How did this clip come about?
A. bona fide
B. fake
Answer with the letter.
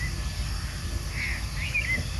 A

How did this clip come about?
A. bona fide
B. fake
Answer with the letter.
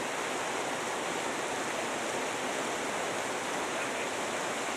A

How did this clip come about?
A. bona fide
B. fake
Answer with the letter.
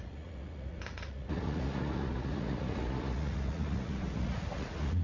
B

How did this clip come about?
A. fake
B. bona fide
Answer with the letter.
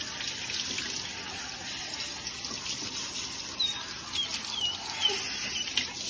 B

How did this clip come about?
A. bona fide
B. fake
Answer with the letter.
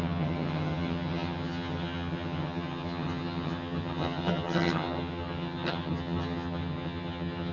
B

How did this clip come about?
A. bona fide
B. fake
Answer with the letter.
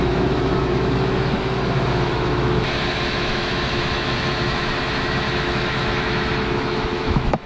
B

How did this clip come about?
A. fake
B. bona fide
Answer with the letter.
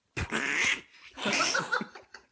B